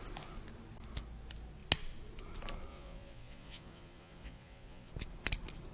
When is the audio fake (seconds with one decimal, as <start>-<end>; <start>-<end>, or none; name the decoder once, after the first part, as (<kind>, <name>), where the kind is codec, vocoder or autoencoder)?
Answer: 2.7-4.9 (vocoder, Vocos)